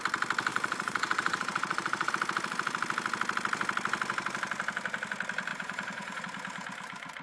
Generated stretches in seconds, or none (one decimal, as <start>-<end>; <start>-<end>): 0.5-2.1; 5.5-6.2